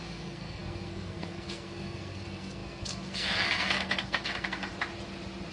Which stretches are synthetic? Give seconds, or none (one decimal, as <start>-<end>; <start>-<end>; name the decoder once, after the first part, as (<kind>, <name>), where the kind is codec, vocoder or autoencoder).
0.0-4.7 (codec, SNAC)